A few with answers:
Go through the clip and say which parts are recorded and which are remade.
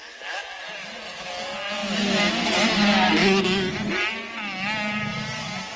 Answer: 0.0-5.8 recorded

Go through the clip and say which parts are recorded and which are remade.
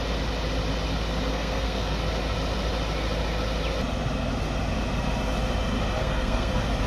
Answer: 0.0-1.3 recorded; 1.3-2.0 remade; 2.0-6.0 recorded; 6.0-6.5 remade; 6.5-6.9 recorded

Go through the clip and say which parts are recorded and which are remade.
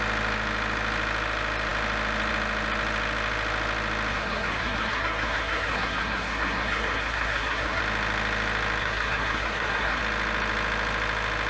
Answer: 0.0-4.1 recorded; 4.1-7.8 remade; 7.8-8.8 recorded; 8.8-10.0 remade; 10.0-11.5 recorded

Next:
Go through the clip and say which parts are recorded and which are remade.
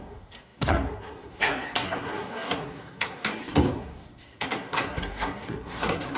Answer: 0.0-6.2 remade